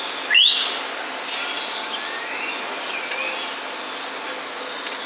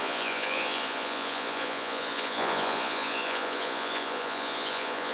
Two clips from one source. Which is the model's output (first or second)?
second